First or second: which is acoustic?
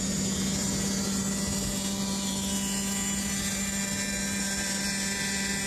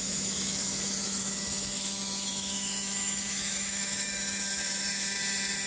first